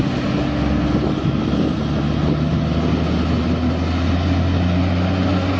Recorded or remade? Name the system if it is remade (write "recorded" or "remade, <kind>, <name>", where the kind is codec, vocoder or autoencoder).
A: recorded